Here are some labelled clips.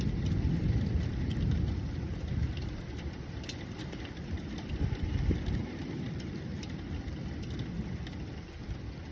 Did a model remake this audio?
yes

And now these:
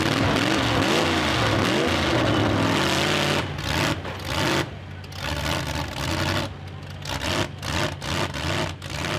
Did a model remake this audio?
no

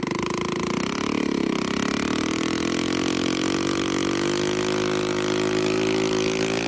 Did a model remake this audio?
no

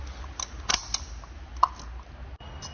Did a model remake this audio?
no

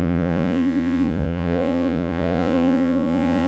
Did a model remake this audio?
yes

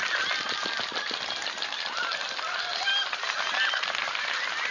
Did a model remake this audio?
no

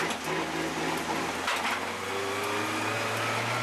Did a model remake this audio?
no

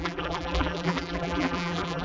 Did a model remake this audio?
yes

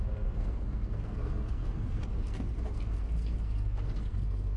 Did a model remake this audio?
yes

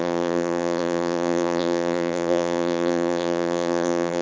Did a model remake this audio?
yes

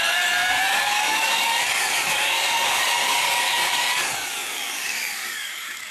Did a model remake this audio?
yes